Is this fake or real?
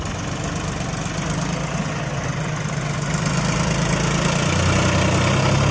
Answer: real